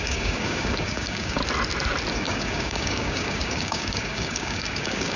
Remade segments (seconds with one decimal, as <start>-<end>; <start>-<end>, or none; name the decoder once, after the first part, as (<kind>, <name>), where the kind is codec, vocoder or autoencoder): 0.0-1.4 (codec, DAC); 2.1-5.2

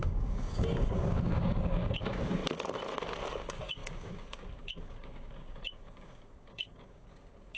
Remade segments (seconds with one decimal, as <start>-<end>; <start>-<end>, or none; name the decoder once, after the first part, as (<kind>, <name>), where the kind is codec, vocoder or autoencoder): 0.0-2.4 (codec, DAC); 3.3-7.6

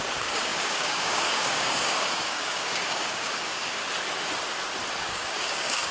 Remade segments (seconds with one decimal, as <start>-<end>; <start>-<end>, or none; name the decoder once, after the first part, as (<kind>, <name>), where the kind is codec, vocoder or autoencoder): 0.0-3.8 (codec, DAC); 5.0-5.9

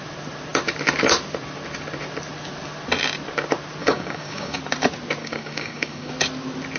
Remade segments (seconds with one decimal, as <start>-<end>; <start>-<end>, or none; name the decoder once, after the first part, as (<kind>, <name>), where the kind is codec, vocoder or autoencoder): 3.8-4.6 (codec, DAC); 5.2-6.1

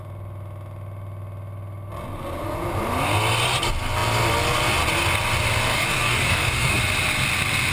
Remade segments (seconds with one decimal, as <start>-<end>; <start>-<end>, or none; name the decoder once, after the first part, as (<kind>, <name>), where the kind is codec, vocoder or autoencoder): 5.7-6.8 (codec, DAC)

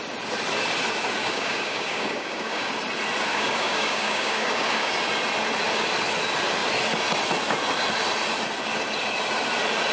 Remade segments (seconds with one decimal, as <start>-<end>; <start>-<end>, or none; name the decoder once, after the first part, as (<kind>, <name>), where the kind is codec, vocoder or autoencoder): 1.2-2.7 (codec, DAC); 3.3-4.9

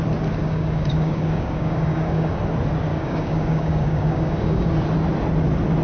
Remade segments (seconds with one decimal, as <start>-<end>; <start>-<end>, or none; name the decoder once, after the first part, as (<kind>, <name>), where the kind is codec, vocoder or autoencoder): 0.4-2.4 (codec, DAC); 2.9-4.7